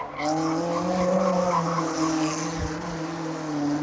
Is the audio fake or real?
real